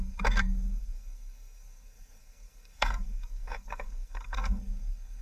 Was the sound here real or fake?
fake